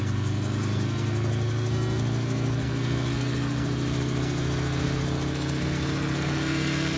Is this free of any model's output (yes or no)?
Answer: no